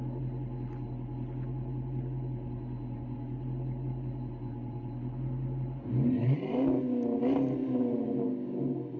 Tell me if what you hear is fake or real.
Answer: real